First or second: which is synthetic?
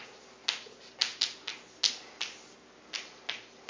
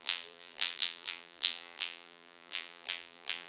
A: second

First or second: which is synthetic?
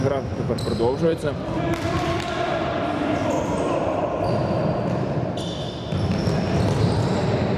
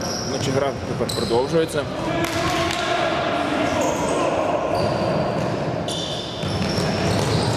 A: first